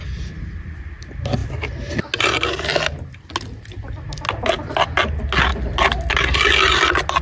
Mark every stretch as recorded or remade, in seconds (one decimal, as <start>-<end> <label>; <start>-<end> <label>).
0.0-7.2 recorded